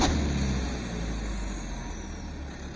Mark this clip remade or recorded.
recorded